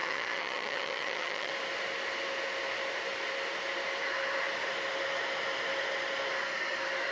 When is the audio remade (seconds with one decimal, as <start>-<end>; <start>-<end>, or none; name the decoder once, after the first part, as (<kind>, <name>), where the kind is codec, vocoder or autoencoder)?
0.0-1.5 (vocoder, HiFi-GAN)